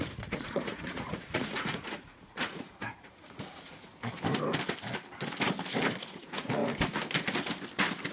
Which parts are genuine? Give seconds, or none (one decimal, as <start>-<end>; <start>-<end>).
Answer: 3.9-6.1; 6.6-8.1